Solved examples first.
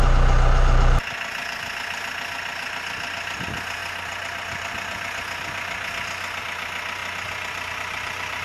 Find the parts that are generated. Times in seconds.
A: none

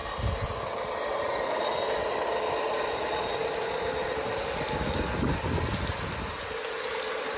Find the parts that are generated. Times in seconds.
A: 0.0-2.9

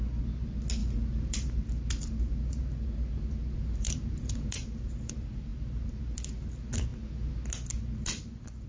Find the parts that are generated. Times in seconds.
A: 0.8-5.1

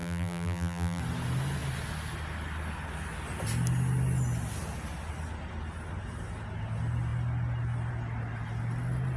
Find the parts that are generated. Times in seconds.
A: 0.0-1.0

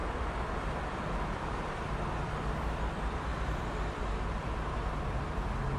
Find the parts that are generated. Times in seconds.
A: 0.0-2.2; 3.3-4.5